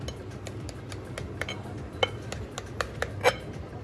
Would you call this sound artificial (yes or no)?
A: no